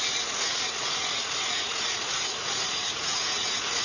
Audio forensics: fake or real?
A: fake